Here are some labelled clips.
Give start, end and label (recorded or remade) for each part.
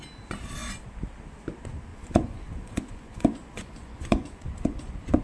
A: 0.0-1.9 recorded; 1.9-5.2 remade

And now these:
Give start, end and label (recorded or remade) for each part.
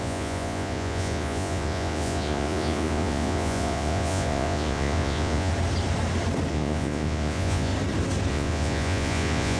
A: 0.0-5.5 remade; 5.5-6.5 recorded; 6.5-7.7 remade; 7.7-8.3 recorded; 8.3-9.6 remade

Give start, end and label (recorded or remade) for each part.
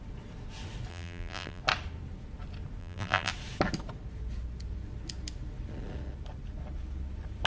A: 0.0-0.9 recorded; 0.9-1.6 remade; 1.6-2.8 recorded; 2.8-3.3 remade; 3.3-7.5 recorded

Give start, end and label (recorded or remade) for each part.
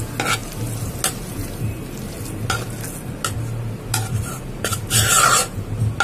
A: 0.0-6.0 recorded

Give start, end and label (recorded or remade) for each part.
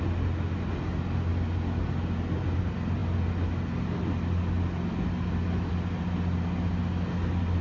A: 0.0-7.6 recorded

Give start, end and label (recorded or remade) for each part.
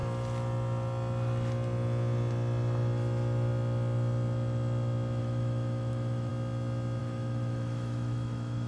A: 0.0-5.2 recorded; 5.2-6.3 remade; 6.3-7.0 recorded; 7.0-8.7 remade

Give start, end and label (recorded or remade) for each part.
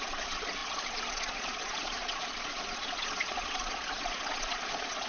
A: 0.0-5.1 remade